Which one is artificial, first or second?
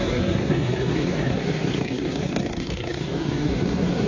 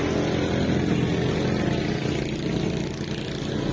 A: first